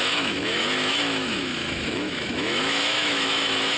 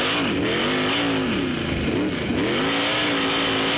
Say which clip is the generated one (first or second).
first